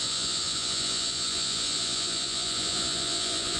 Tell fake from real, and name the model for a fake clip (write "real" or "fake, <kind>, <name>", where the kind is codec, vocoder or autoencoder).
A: fake, vocoder, Vocos